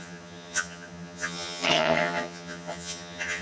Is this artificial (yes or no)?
yes